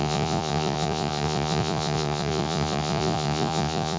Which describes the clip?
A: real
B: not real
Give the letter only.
B